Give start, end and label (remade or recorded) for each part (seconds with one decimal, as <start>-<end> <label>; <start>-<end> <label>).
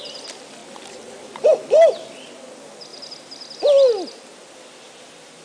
0.0-5.4 recorded